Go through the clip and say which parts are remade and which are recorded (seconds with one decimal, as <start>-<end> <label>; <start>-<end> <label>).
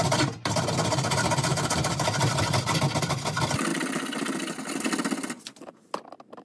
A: 0.0-6.4 recorded